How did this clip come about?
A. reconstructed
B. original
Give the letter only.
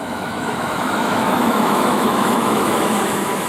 A